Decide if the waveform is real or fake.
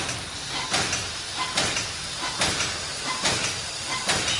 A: real